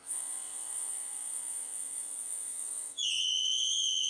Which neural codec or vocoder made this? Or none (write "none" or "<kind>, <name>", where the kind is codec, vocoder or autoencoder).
vocoder, Vocos